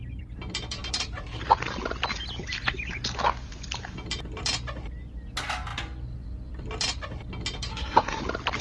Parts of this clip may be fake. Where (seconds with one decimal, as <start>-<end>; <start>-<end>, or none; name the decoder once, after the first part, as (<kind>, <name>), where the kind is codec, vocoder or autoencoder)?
7.7-8.2 (codec, SNAC)